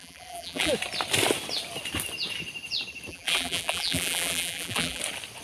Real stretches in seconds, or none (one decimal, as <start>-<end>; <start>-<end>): 0.7-3.1; 5.0-5.4